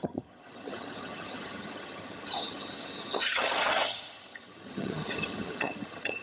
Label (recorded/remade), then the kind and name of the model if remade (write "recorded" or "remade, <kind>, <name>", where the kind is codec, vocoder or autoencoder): remade, vocoder, HiFi-GAN